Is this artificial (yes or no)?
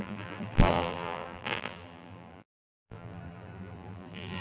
yes